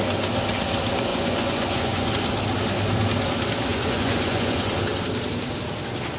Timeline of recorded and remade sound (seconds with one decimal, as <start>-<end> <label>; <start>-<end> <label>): 0.0-1.1 recorded; 1.1-2.1 remade; 2.1-3.7 recorded; 3.7-4.7 remade; 4.7-6.2 recorded